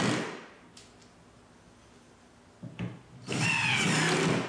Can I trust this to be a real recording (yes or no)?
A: yes